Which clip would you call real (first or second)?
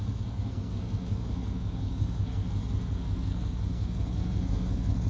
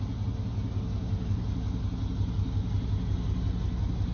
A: second